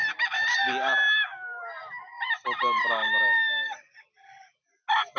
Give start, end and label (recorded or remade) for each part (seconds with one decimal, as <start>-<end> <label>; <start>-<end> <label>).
0.0-5.2 recorded